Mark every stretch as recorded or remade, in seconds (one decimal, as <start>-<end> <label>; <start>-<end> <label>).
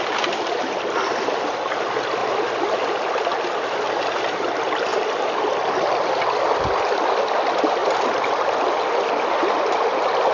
0.0-10.3 recorded